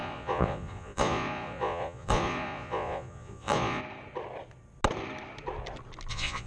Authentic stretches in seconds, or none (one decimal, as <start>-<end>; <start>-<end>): 3.8-6.1